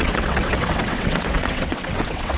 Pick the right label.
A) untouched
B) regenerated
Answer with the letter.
B